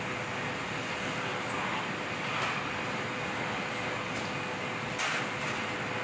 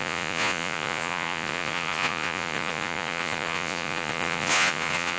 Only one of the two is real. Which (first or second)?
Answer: first